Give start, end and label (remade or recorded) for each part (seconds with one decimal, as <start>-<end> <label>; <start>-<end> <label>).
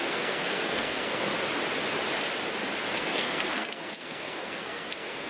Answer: 0.0-1.3 remade; 1.3-2.9 recorded; 2.9-5.3 remade